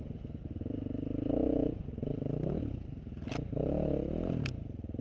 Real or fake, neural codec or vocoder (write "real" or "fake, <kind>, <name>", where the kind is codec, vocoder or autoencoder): real